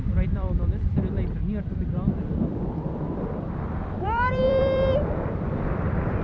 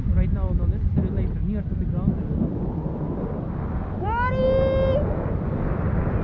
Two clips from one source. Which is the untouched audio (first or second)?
second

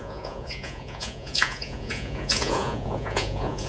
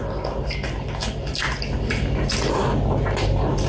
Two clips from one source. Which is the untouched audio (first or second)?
second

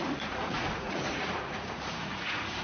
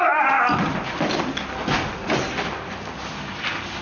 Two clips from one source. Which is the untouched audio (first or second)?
second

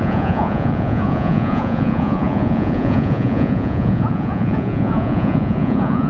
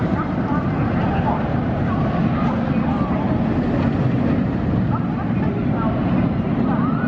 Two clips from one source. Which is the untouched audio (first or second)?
second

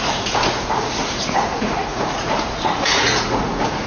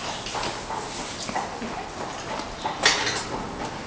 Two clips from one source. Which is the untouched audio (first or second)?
second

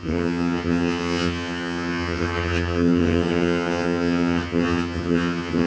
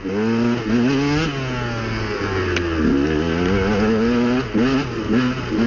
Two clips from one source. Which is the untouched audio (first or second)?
second